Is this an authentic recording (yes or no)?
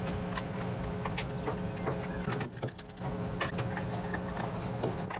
yes